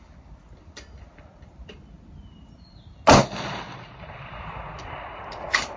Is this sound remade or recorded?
recorded